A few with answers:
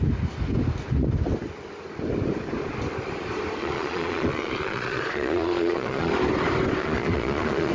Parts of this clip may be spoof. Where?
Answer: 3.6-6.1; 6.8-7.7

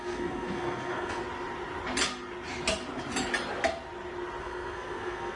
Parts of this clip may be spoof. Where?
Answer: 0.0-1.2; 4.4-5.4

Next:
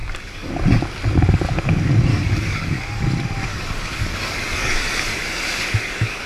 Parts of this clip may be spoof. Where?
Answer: 0.0-0.5; 2.1-3.0; 3.5-6.3

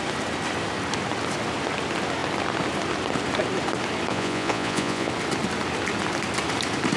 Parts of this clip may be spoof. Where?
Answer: 4.1-5.1

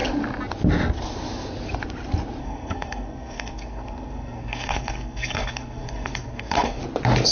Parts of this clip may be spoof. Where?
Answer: 2.4-6.8

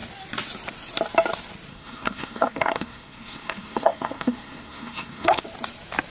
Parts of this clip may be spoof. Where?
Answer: 1.7-5.4

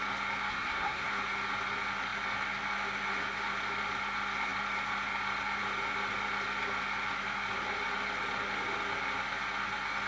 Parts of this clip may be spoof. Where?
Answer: 0.5-1.1

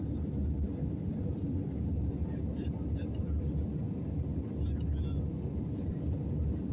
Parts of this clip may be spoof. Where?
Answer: none